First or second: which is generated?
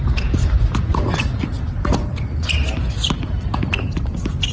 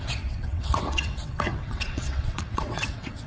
second